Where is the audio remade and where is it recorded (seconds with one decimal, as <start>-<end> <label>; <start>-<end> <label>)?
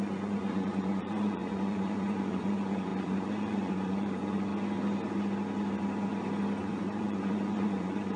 0.0-4.5 remade; 4.5-6.6 recorded; 6.6-8.2 remade